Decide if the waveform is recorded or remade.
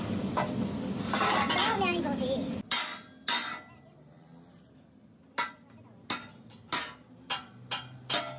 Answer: recorded